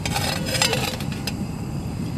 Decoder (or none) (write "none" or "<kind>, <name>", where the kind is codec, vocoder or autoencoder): none